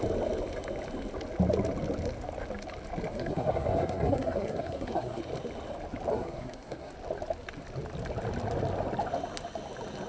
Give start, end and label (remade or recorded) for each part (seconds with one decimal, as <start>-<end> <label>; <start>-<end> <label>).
0.0-3.1 recorded; 3.1-5.2 remade; 5.2-6.1 recorded; 6.1-6.9 remade; 6.9-10.1 recorded